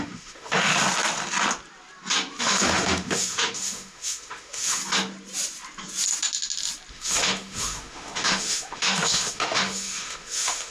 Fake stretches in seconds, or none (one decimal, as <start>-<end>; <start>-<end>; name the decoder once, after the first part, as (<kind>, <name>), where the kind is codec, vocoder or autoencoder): 0.0-0.7 (autoencoder, DAC-VAE); 2.4-4.8; 6.9-10.7